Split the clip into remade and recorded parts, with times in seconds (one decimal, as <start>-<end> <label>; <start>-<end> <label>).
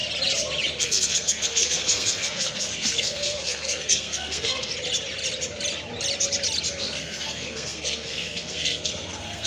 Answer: 0.0-0.8 recorded; 0.8-4.7 remade; 4.7-6.8 recorded; 6.8-9.5 remade